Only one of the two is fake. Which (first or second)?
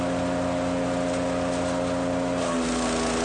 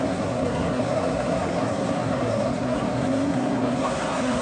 second